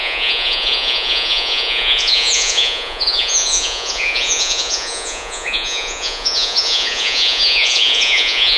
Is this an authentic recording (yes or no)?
no